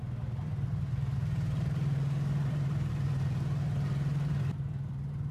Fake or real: fake